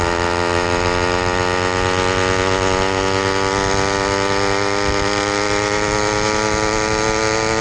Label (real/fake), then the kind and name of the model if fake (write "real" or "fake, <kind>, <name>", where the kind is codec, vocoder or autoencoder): real